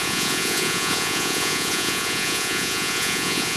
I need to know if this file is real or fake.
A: fake